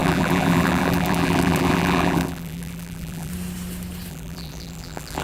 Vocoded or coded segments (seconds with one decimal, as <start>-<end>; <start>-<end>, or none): 0.0-3.3; 4.1-5.2